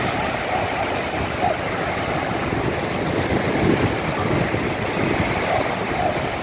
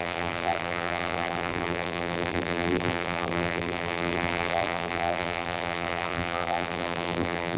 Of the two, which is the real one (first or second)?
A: first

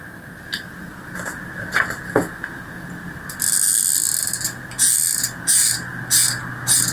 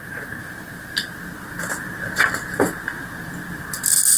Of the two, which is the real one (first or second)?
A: first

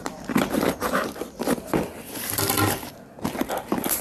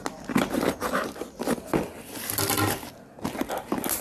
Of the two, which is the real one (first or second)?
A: second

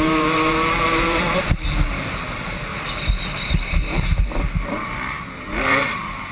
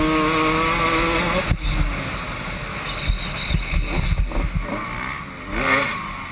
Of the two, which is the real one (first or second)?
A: second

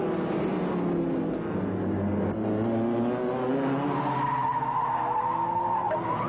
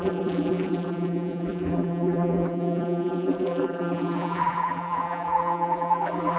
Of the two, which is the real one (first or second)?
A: first